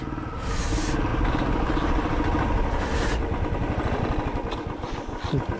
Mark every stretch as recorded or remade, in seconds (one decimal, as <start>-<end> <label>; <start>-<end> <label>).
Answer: 0.0-5.6 recorded